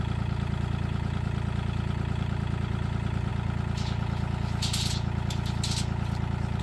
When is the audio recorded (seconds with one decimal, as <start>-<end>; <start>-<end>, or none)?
3.3-6.6